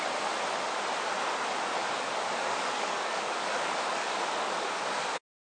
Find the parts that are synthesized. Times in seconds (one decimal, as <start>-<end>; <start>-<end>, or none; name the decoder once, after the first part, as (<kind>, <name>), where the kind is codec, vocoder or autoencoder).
1.8-5.0 (codec, DAC)